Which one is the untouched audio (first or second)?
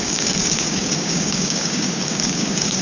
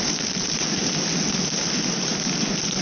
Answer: second